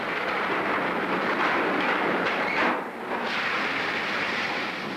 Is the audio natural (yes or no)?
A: no